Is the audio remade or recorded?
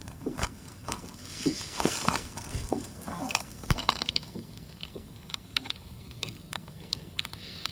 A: remade